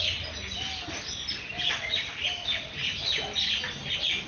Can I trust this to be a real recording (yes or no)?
yes